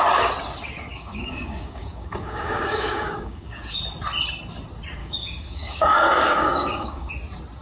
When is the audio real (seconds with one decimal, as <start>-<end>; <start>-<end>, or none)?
0.0-0.9; 3.8-5.0; 7.1-7.6